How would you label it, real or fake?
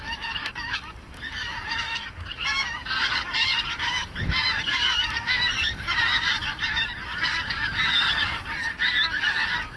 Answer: fake